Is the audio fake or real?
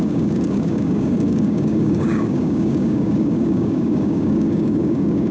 fake